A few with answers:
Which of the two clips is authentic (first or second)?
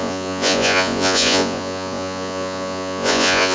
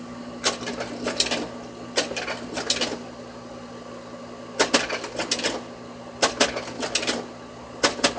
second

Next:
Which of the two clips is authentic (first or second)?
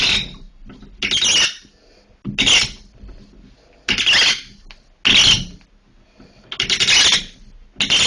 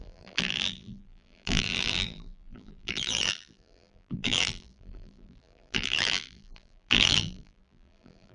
first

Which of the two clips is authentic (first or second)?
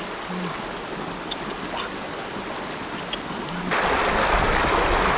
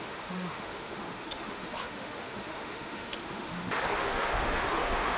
first